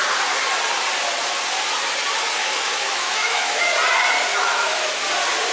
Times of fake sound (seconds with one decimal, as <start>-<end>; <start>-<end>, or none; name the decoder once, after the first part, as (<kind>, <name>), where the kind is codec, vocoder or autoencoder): 2.4-3.7 (autoencoder, DAC-VAE); 4.3-4.9